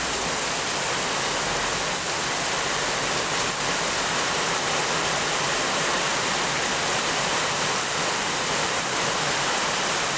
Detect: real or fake real